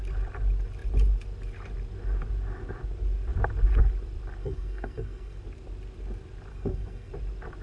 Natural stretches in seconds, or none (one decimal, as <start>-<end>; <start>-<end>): 0.0-4.4; 5.4-6.5; 7.1-7.6